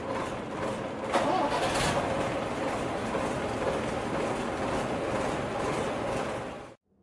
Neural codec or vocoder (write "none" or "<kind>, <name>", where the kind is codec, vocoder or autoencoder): none